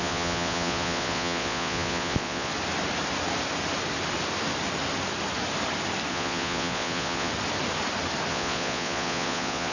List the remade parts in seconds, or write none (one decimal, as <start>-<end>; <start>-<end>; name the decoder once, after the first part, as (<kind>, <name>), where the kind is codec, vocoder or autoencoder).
0.0-2.5 (vocoder, Vocos); 6.1-7.3; 8.3-9.7